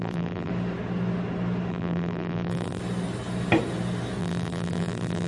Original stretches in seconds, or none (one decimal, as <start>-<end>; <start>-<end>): 0.5-1.7; 2.8-4.2

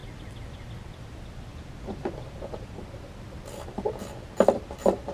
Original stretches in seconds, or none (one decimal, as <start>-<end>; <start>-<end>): 0.9-1.5; 3.0-5.1

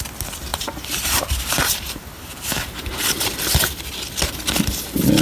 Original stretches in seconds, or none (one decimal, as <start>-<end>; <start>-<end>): 0.0-0.5; 3.4-5.2

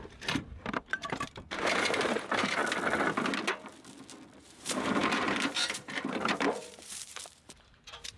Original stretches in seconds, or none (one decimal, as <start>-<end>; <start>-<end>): 2.6-4.4